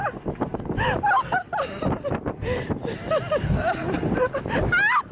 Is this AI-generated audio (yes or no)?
no